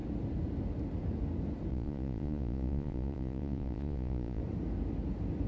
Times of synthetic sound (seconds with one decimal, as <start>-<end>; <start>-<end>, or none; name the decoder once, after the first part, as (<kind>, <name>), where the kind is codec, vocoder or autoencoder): 1.7-4.4 (vocoder, Vocos)